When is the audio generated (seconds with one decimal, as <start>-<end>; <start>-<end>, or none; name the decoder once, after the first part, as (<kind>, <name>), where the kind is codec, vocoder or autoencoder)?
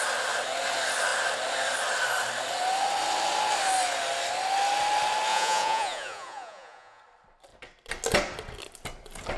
5.3-7.0 (vocoder, Vocos)